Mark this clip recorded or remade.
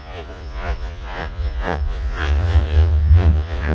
remade